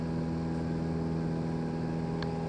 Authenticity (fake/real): real